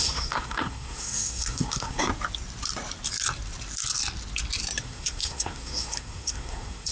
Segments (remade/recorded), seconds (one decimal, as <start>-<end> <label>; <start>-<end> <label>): 0.0-2.1 remade; 2.1-4.8 recorded; 4.8-6.9 remade